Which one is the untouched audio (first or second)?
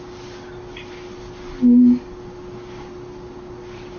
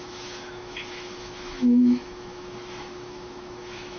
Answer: first